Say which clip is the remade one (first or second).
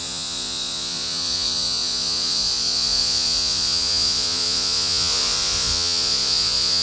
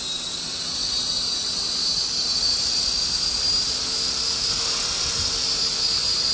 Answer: first